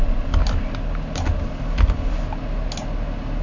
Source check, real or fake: real